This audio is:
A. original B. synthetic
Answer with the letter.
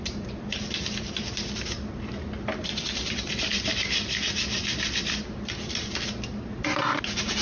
A